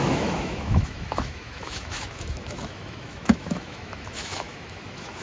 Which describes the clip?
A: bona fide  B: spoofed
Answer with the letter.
B